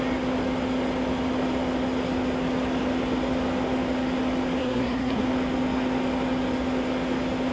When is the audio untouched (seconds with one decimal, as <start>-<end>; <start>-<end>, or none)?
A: 0.0-4.6; 5.2-7.5